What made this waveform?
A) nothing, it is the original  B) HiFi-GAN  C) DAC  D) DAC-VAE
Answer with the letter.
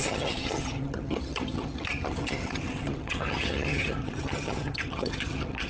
B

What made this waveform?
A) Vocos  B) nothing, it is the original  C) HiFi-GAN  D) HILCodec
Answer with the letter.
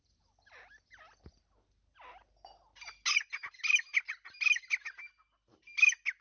B